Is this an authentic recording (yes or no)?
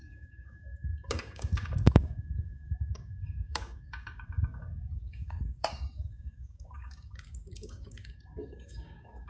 no